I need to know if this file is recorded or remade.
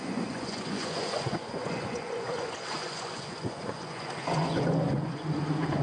remade